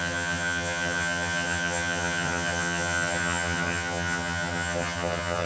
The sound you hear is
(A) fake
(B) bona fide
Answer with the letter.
A